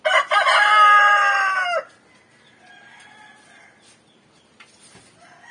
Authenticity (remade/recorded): recorded